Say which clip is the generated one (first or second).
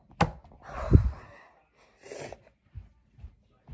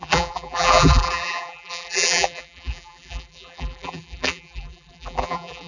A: second